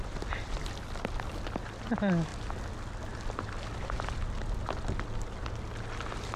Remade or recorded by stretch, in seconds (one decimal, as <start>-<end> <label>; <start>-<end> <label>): 0.0-6.4 recorded

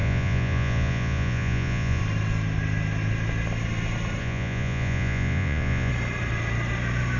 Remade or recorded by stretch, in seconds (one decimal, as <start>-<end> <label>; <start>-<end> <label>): 0.0-2.0 remade; 2.0-4.2 recorded; 4.2-5.9 remade; 5.9-7.2 recorded

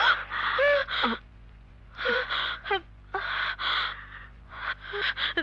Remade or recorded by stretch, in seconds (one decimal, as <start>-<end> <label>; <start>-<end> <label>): 0.0-0.8 recorded; 0.8-3.0 remade; 3.0-4.2 recorded; 4.2-4.7 remade; 4.7-5.4 recorded

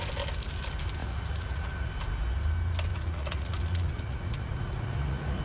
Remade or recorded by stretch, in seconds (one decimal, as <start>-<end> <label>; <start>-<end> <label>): 0.0-1.0 recorded; 1.0-1.9 remade; 1.9-2.9 recorded; 2.9-5.4 remade

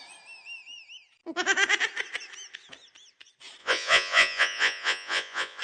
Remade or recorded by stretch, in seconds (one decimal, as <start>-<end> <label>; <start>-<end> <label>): 0.0-3.6 recorded; 3.6-5.6 remade